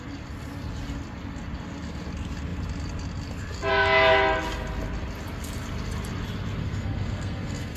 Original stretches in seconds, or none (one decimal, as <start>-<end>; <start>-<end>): 0.0-6.6